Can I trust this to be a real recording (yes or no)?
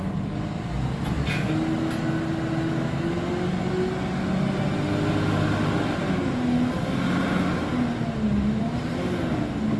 yes